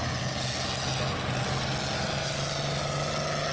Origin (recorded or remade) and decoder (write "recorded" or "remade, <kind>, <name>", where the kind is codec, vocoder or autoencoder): recorded